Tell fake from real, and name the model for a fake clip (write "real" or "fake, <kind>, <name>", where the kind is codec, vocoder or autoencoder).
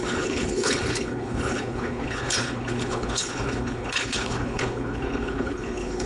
fake, codec, HILCodec